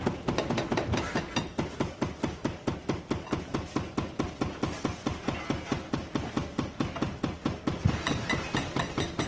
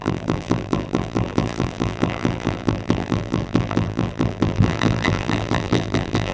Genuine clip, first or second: first